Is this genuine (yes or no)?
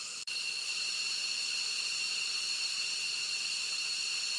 no